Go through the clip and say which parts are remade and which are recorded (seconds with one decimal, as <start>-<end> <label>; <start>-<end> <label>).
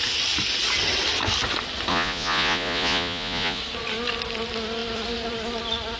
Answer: 0.0-1.9 recorded; 1.9-3.6 remade; 3.6-6.0 recorded